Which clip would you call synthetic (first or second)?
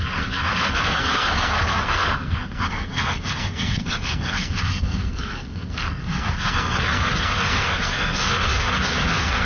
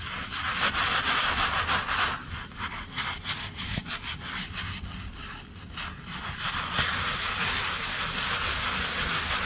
first